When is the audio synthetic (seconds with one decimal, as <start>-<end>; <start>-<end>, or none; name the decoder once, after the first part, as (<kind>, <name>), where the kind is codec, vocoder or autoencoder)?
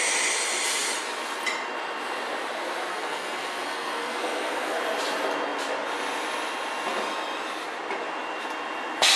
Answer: 2.9-4.8 (codec, SNAC)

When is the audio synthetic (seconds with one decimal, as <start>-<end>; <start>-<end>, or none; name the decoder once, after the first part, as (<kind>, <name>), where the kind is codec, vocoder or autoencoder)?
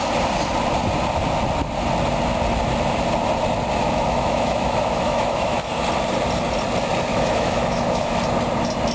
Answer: 3.8-5.7 (autoencoder, DAC-VAE); 7.1-8.1